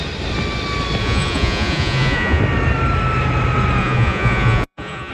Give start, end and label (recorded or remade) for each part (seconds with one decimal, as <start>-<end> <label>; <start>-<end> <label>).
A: 0.0-1.0 recorded; 1.0-2.4 remade; 2.4-3.8 recorded; 3.8-5.1 remade